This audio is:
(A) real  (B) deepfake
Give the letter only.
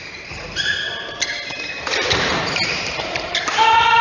B